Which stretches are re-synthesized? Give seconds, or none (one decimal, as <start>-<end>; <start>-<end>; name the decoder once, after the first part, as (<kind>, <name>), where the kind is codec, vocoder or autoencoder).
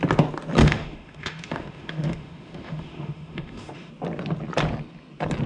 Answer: 0.6-3.9 (autoencoder, DAC-VAE)